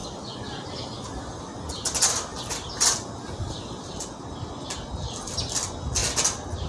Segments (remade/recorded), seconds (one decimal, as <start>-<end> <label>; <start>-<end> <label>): 0.0-6.7 recorded